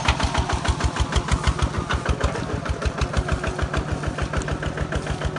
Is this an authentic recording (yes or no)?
yes